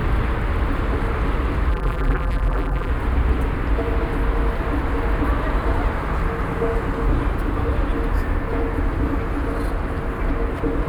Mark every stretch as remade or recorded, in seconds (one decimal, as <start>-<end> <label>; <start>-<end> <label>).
0.0-1.7 recorded; 1.7-2.9 remade; 2.9-10.9 recorded